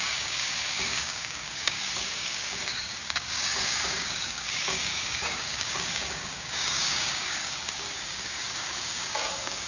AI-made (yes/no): yes